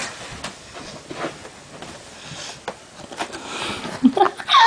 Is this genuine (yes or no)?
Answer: yes